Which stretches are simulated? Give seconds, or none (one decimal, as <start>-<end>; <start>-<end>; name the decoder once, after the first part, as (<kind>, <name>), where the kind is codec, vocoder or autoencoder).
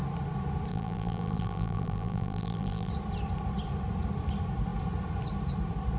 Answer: 0.7-2.9 (vocoder, BigVGAN v2)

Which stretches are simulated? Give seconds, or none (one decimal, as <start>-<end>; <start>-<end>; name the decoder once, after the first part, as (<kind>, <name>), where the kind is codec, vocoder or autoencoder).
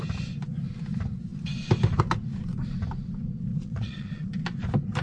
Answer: 3.5-4.3 (vocoder, Vocos)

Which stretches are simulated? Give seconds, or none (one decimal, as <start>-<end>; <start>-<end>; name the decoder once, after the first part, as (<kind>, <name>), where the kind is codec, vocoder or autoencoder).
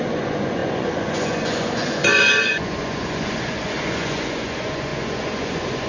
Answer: 0.0-5.9 (vocoder, Vocos)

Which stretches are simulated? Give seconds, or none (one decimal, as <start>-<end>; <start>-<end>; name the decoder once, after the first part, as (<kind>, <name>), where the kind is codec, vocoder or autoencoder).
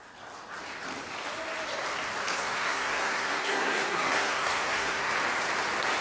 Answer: 2.3-5.1 (codec, SNAC)